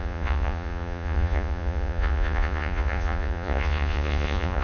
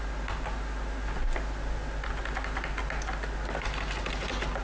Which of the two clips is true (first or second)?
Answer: second